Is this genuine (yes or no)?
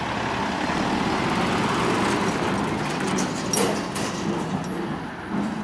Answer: yes